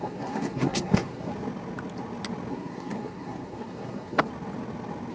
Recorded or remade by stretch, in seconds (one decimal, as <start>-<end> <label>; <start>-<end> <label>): 0.0-1.3 remade; 1.3-2.5 recorded; 2.5-4.3 remade; 4.3-5.1 recorded